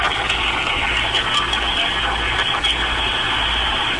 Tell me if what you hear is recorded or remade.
recorded